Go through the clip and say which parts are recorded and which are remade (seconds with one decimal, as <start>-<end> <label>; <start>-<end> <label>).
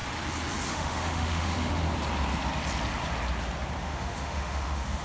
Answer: 0.0-0.7 recorded; 0.7-1.8 remade; 1.8-3.8 recorded; 3.8-5.0 remade